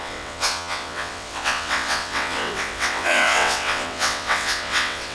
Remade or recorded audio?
remade